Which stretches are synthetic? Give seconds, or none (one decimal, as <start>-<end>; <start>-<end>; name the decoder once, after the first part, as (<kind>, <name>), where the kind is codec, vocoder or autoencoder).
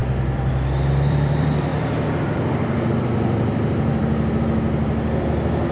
0.0-5.7 (vocoder, BigVGAN v2)